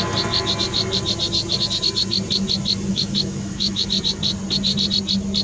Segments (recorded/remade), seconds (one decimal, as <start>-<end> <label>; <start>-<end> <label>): 0.0-2.9 recorded; 2.9-3.9 remade; 3.9-5.4 recorded